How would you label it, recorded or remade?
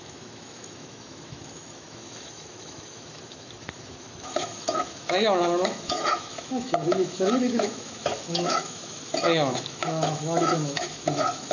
remade